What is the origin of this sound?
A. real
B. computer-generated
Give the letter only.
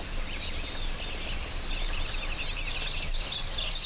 A